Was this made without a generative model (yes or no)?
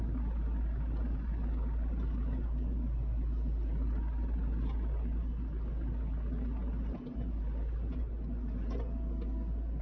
yes